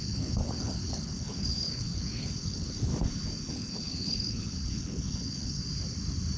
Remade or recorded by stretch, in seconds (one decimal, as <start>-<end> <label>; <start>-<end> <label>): 0.0-2.9 remade; 2.9-3.5 recorded; 3.5-5.6 remade; 5.6-6.4 recorded